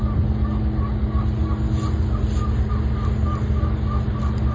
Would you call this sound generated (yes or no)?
no